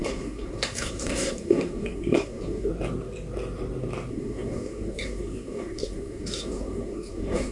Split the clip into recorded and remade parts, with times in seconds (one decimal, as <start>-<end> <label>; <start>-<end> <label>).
0.0-2.7 remade; 2.7-4.1 recorded; 4.1-7.5 remade